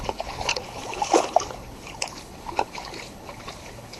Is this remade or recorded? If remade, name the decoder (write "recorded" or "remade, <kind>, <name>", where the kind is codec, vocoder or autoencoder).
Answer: remade, codec, HILCodec